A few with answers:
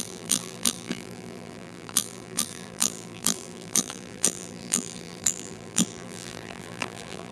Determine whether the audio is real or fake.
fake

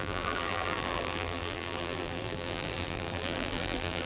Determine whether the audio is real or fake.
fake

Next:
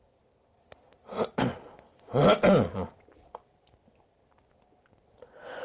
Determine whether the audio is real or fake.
real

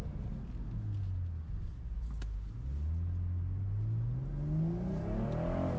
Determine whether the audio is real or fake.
real